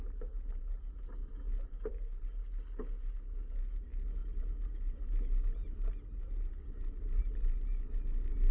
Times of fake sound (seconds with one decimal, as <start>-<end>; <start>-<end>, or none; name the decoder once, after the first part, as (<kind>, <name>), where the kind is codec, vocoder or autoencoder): none